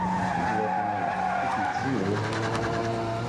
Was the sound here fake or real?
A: real